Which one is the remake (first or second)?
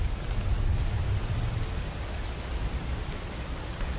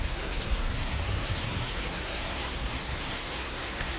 second